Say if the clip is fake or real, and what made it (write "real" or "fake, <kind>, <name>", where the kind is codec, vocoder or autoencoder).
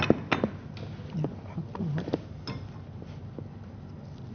real